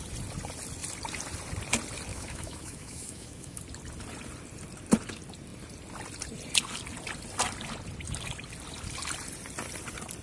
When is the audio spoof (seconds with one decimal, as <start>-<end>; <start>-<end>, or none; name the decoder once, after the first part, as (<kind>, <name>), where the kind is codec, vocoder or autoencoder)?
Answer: 2.1-3.6 (autoencoder, DAC-VAE)